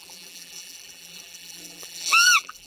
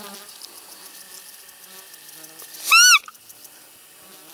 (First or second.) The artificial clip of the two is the first